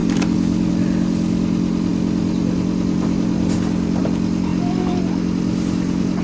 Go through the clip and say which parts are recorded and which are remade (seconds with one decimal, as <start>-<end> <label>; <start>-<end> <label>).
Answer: 0.0-6.2 recorded